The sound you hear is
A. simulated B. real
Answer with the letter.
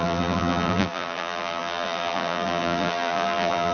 A